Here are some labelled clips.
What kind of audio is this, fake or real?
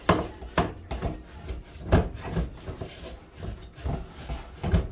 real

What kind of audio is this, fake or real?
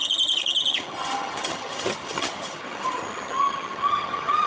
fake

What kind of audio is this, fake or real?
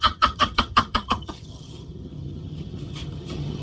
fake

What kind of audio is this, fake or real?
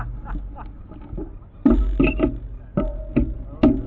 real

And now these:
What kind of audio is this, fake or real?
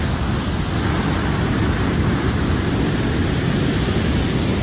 real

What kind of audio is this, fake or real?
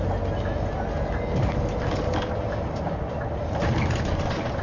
real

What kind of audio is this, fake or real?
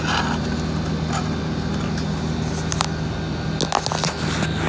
real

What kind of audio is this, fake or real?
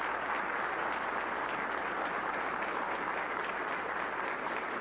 real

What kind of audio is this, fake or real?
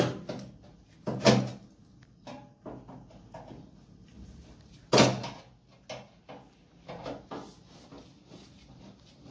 real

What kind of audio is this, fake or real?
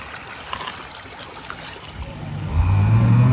real